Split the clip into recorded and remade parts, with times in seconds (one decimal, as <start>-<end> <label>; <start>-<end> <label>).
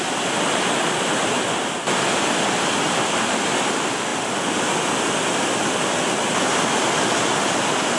0.0-8.0 recorded